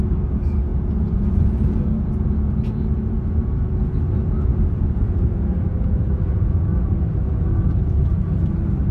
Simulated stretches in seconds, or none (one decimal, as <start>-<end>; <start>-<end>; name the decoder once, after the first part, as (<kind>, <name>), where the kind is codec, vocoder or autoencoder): 0.0-8.1 (vocoder, Vocos)